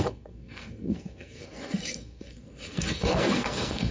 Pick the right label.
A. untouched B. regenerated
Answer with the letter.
B